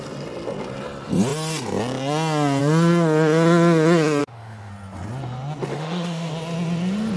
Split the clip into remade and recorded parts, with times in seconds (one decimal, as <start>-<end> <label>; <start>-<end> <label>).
0.0-4.2 recorded; 4.2-4.7 remade; 4.7-5.7 recorded; 5.7-6.3 remade; 6.3-7.2 recorded